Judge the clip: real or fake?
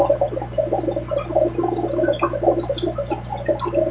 real